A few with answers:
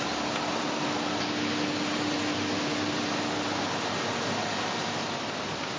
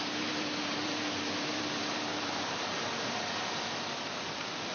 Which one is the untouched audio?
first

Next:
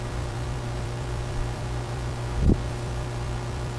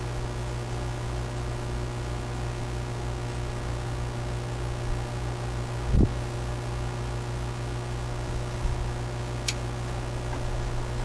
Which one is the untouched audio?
second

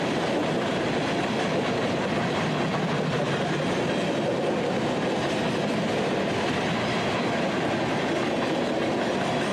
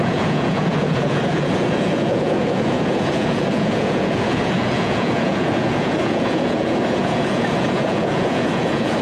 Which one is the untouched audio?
first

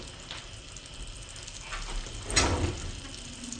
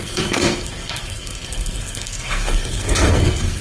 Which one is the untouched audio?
first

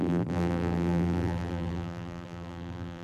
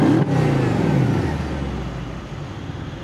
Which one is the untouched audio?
second